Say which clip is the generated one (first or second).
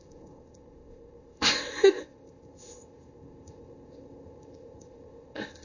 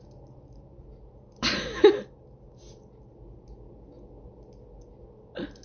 first